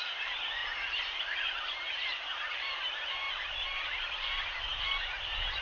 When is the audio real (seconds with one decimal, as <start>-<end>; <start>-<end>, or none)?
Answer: 0.0-0.6; 3.3-5.6